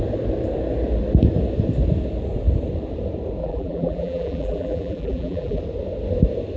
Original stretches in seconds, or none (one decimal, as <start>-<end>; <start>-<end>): 0.0-3.4; 5.6-6.6

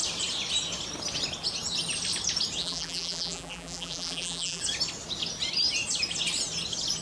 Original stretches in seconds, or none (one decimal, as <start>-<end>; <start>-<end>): 0.0-2.6; 4.6-7.0

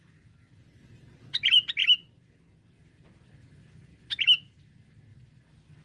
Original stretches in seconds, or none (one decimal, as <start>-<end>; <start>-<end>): 0.0-5.8

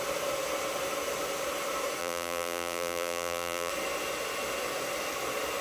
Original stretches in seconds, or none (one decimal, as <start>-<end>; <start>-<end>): 0.0-2.0; 3.7-5.6

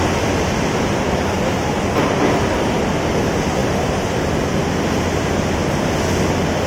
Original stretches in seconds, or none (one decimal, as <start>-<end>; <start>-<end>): 0.0-3.6; 4.2-6.7

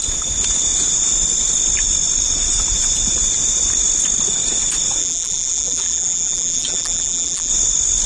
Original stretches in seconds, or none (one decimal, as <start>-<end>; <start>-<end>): 0.0-5.0; 7.5-8.1

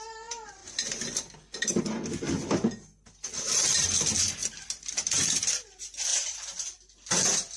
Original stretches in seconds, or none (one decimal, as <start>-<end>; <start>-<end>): 0.0-6.1; 6.8-7.6